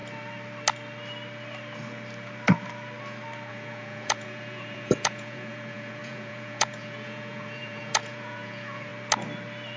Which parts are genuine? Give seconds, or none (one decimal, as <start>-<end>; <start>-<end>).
0.0-3.5; 8.9-9.8

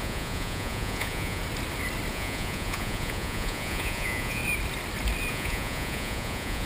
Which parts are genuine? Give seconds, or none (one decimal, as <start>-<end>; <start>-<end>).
1.4-2.1; 4.4-5.3

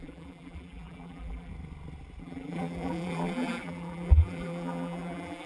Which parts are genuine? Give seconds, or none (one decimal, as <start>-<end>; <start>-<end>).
1.5-2.2

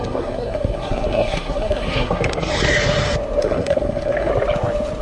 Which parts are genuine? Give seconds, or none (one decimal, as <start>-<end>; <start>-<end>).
2.5-3.4; 4.3-5.0

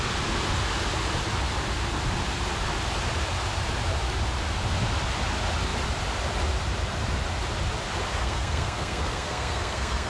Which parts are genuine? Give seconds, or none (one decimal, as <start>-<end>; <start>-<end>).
0.0-8.2

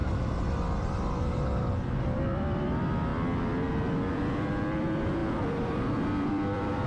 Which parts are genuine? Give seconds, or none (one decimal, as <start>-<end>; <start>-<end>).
0.0-2.0; 3.1-4.1